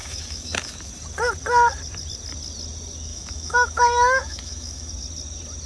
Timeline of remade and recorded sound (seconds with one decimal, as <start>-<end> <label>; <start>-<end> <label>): 0.0-0.9 remade; 0.9-3.1 recorded; 3.1-4.9 remade; 4.9-5.7 recorded